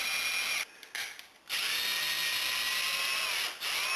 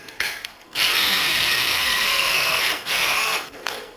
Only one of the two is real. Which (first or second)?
first